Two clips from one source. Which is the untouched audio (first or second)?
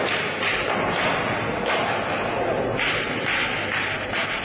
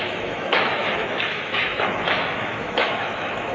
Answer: first